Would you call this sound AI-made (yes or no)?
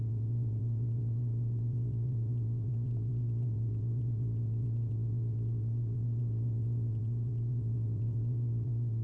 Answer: yes